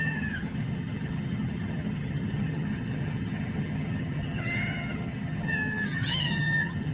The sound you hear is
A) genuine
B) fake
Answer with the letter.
B